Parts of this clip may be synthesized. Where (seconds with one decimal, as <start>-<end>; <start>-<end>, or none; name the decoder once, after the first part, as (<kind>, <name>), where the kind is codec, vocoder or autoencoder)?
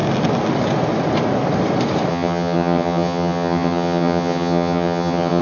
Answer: 2.1-5.4 (vocoder, HiFi-GAN)